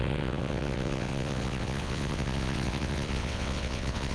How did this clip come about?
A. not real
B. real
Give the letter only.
A